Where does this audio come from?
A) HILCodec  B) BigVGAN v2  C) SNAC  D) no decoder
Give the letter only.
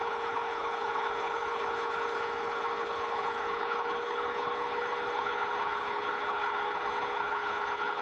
A